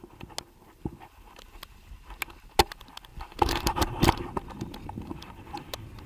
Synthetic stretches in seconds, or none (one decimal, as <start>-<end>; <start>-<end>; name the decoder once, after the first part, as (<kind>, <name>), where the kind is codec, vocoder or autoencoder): 3.1-4.2 (vocoder, BigVGAN v2)